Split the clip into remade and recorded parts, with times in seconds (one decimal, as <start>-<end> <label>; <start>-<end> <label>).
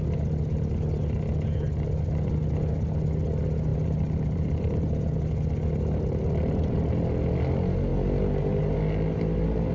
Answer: 0.0-3.7 recorded; 3.7-5.3 remade; 5.3-9.7 recorded